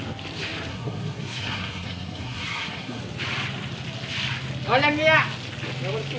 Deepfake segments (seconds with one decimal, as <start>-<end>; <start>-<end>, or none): 0.7-3.0